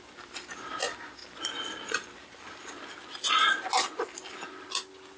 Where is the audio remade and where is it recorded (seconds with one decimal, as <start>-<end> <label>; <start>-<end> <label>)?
0.0-5.2 recorded